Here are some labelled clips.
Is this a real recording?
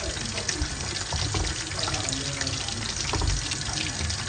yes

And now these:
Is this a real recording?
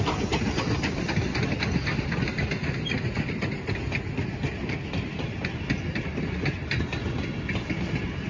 yes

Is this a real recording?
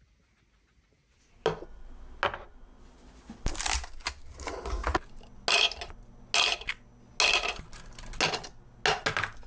yes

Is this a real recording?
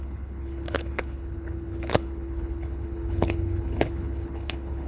no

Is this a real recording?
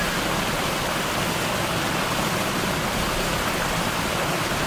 yes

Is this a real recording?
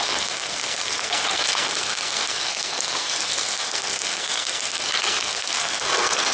no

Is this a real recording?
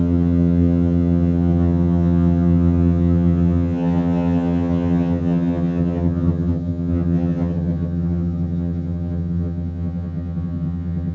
no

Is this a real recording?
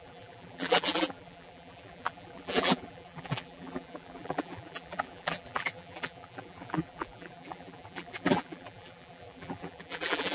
no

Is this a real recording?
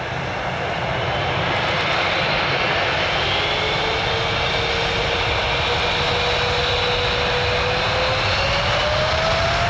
yes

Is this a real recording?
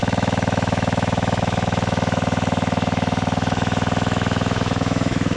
no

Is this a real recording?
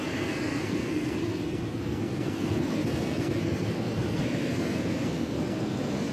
no